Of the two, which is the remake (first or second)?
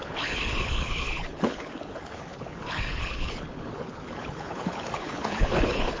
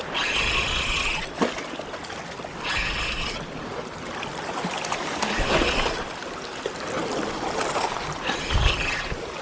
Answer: first